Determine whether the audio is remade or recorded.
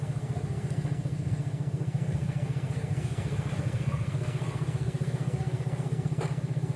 remade